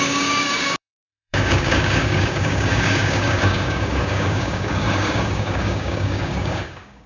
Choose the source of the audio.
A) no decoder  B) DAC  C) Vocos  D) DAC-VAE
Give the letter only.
B